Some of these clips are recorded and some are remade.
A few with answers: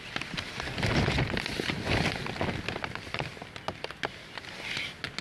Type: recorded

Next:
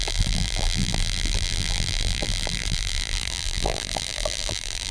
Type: remade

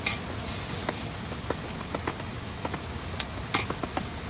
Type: recorded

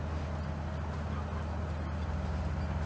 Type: recorded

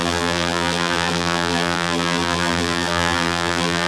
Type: remade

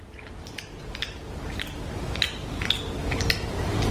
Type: recorded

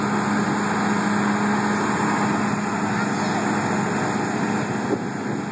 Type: recorded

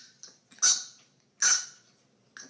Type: recorded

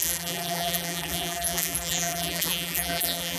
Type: remade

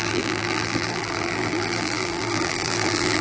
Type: remade